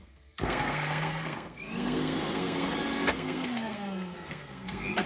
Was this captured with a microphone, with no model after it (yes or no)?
no